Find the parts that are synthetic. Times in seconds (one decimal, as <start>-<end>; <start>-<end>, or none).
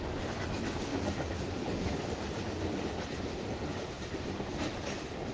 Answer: none